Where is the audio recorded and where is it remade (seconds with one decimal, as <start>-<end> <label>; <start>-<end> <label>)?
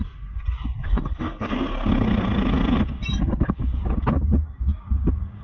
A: 0.0-0.9 recorded; 0.9-1.5 remade; 1.5-5.4 recorded